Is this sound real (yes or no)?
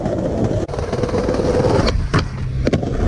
yes